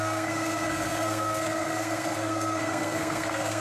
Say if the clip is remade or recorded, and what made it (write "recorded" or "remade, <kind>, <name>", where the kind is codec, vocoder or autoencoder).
remade, codec, SNAC